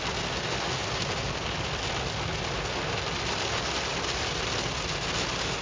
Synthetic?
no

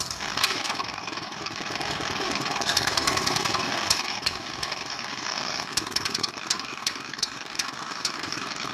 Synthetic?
yes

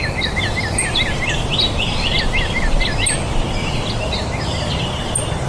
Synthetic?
no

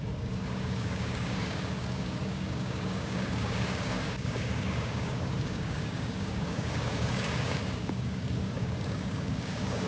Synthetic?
yes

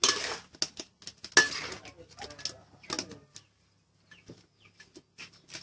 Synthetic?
no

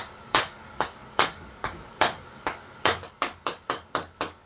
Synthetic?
yes